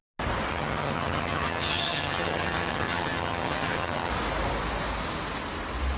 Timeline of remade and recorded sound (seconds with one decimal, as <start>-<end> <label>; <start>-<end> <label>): 0.0-0.5 recorded; 0.5-4.1 remade; 4.1-6.0 recorded